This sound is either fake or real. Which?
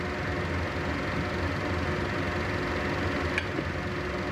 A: real